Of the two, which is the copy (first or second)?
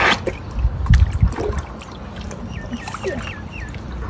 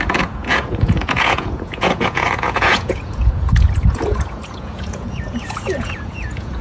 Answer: second